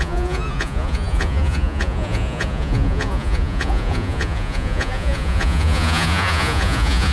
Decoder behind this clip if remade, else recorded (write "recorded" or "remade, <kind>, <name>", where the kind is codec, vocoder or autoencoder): remade, vocoder, Vocos